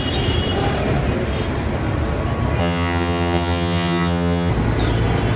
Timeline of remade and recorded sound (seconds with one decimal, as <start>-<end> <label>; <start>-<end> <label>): 0.0-2.6 recorded; 2.6-4.5 remade; 4.5-5.4 recorded